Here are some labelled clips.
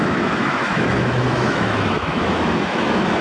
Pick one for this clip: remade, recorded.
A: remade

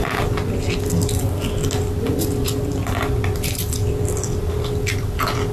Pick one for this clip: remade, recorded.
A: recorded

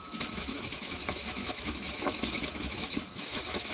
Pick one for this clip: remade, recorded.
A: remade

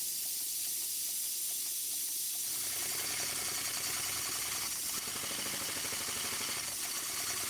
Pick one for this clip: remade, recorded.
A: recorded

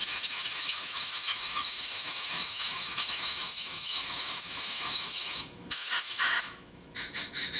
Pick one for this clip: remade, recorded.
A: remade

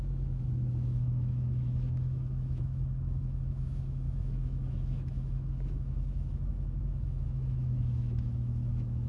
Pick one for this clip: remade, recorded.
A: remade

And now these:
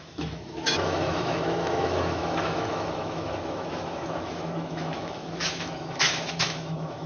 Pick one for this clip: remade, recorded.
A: remade